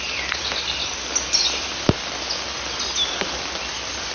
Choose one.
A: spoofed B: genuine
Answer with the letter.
B